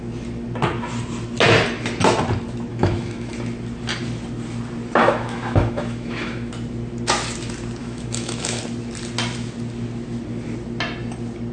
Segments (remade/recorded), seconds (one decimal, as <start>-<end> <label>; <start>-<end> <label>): 0.0-2.7 recorded; 2.7-3.3 remade; 3.3-5.0 recorded; 5.0-6.5 remade; 6.5-7.8 recorded; 7.8-8.6 remade; 8.6-11.5 recorded